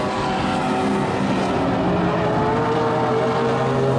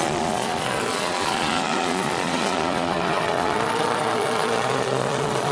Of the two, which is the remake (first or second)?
second